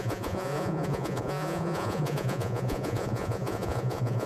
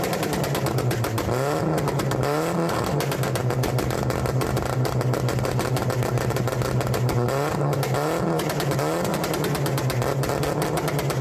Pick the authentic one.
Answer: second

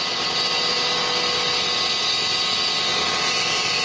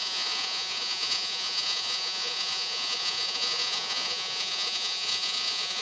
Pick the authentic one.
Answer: first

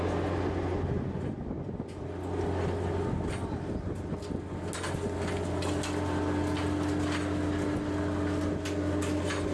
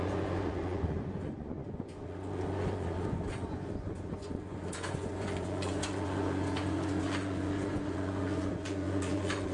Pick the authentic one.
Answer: first